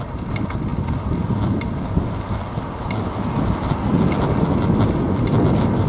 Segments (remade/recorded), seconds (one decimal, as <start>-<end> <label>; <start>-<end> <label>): 0.0-5.9 recorded